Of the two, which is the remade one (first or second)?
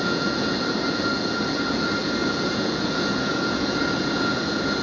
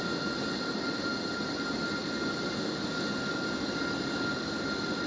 first